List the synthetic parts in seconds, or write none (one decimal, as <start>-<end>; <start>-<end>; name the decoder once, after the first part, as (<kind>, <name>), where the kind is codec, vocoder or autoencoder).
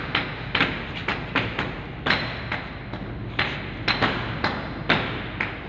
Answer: 1.1-2.4 (vocoder, BigVGAN v2)